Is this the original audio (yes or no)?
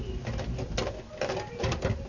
yes